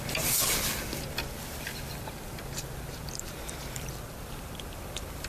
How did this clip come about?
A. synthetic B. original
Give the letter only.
A